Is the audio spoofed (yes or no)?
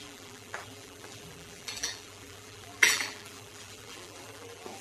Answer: yes